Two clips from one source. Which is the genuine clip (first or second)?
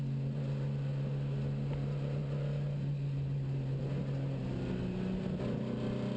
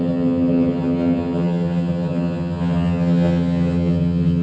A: first